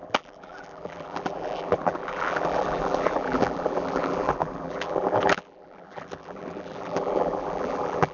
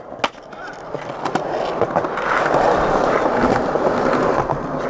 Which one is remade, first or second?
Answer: first